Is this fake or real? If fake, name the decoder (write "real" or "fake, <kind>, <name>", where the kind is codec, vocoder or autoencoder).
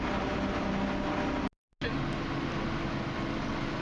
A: real